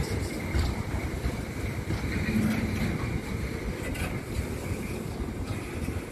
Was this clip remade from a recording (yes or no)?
yes